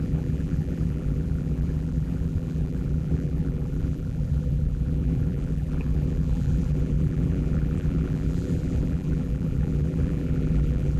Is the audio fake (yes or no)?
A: yes